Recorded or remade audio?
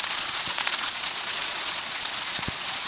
remade